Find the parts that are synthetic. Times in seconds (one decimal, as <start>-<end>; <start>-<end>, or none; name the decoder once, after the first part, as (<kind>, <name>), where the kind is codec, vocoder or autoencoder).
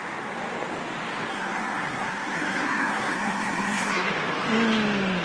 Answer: 1.3-4.1 (codec, SNAC)